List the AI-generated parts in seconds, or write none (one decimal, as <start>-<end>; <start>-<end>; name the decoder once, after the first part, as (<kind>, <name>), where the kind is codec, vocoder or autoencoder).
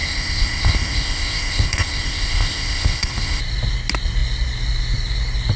0.0-3.4 (codec, ZipCodec)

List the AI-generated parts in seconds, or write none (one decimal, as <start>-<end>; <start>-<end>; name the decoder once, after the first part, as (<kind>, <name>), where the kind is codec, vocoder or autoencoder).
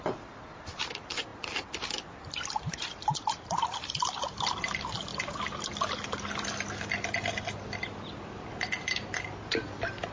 none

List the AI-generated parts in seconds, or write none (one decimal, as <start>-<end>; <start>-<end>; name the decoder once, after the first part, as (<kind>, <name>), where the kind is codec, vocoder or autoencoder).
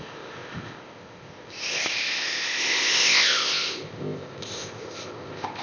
0.0-5.6 (codec, ZipCodec)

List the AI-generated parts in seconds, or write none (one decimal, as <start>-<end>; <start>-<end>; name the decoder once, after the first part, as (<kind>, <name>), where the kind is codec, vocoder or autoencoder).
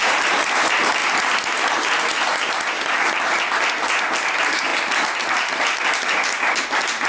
none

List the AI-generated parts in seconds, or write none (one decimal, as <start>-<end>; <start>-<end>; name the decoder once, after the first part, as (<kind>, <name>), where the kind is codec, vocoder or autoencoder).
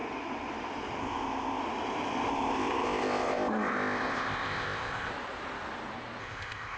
1.0-1.6 (codec, ZipCodec); 2.3-5.1; 6.2-6.8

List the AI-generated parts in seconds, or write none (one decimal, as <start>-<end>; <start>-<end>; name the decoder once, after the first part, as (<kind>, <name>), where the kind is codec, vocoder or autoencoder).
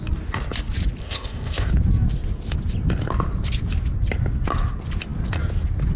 1.0-1.7 (codec, ZipCodec)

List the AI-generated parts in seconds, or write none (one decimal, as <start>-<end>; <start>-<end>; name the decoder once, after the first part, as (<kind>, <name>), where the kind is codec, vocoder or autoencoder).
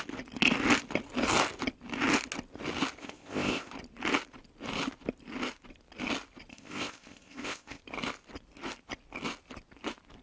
3.0-3.7 (codec, ZipCodec); 6.5-7.8